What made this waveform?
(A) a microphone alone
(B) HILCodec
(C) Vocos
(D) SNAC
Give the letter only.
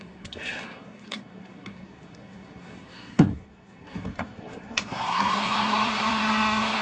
D